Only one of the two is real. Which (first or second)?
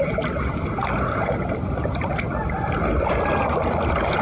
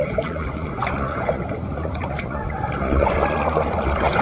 first